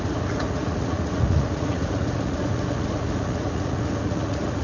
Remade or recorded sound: remade